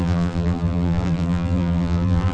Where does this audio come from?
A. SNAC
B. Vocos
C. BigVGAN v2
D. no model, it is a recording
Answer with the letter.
C